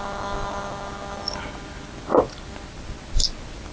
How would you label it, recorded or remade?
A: recorded